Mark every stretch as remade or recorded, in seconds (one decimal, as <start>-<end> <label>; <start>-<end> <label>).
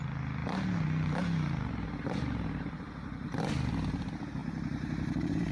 0.0-5.5 recorded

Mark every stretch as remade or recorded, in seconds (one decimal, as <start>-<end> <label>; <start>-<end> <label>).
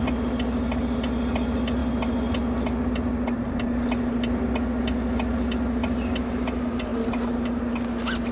0.0-8.3 recorded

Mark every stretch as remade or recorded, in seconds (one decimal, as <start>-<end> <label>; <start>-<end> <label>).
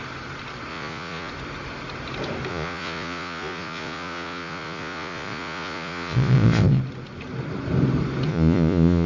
0.0-0.7 recorded; 0.7-1.3 remade; 1.3-2.5 recorded; 2.5-6.8 remade; 6.8-8.3 recorded; 8.3-9.1 remade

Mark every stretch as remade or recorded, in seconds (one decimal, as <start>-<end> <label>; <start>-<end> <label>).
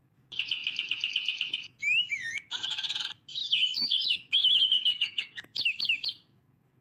0.0-6.8 remade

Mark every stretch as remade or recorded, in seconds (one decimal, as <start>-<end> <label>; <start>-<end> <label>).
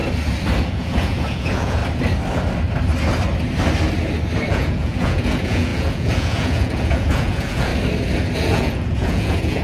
0.0-0.7 recorded; 0.7-1.8 remade; 1.8-4.5 recorded; 4.5-7.7 remade; 7.7-8.4 recorded; 8.4-9.6 remade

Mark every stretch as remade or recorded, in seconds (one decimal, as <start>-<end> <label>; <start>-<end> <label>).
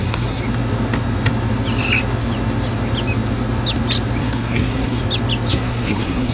0.0-0.4 remade; 0.4-4.2 recorded; 4.2-5.0 remade; 5.0-5.5 recorded; 5.5-6.3 remade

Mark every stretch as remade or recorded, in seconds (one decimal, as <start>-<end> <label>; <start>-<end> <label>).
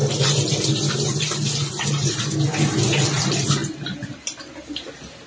0.0-5.3 recorded